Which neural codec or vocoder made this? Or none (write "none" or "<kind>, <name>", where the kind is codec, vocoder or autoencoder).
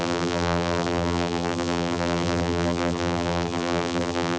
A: vocoder, BigVGAN v2